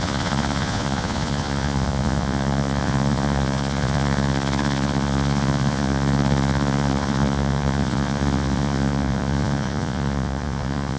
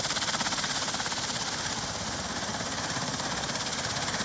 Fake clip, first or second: first